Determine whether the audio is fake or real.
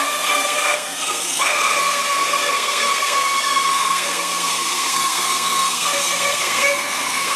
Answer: fake